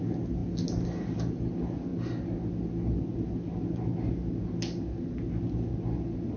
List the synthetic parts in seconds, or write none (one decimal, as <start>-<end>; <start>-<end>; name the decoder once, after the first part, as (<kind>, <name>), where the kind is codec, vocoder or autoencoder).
none